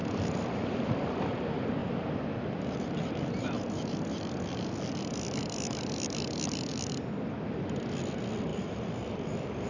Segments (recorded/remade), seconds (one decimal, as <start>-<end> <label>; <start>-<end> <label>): 0.0-0.9 remade; 0.9-1.8 recorded; 1.8-4.2 remade; 4.2-8.5 recorded; 8.5-9.7 remade